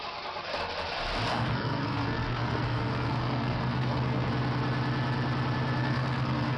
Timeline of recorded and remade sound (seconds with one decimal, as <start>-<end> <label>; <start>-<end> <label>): 0.0-1.3 recorded; 1.3-4.3 remade; 4.3-5.8 recorded; 5.8-6.6 remade